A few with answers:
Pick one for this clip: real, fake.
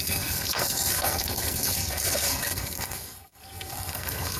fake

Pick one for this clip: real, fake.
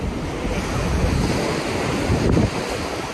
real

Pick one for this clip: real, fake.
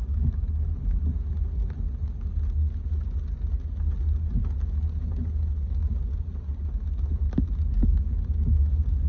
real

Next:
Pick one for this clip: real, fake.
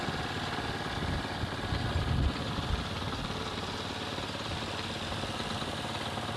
real